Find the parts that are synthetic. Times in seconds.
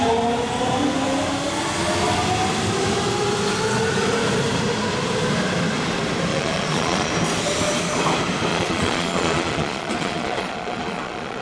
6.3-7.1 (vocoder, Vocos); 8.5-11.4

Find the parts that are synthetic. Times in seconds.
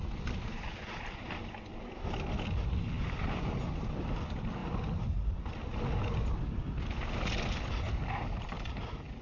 none